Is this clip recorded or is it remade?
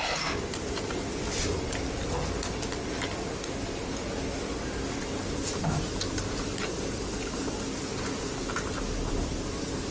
recorded